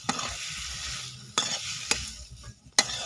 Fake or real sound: real